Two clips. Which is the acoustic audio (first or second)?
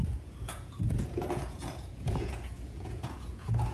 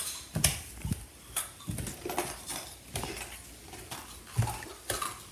second